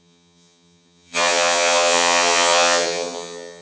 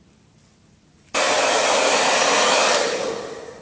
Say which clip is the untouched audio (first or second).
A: second